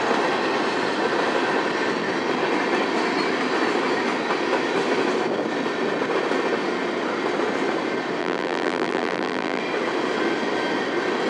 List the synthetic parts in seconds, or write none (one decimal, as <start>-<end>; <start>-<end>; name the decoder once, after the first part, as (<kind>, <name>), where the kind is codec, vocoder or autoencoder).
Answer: 8.2-9.6 (vocoder, BigVGAN v2)

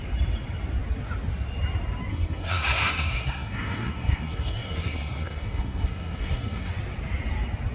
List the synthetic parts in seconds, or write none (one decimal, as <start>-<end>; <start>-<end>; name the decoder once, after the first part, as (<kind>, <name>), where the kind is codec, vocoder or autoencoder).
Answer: 2.1-6.7 (codec, SNAC)

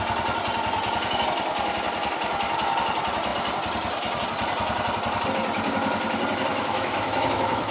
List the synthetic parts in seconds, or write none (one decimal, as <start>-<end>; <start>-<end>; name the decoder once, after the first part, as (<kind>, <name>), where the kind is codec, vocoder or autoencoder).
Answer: 6.5-7.7 (autoencoder, DAC-VAE)

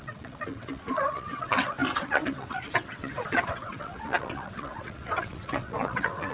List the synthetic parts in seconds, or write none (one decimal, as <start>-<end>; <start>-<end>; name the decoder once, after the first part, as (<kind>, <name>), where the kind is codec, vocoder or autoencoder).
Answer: 0.0-6.3 (vocoder, WaveNeXt)

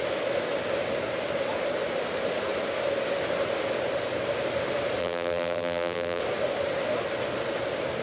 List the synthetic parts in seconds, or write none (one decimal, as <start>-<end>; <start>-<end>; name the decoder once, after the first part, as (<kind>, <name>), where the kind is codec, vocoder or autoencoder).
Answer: 5.0-6.2 (vocoder, BigVGAN v2)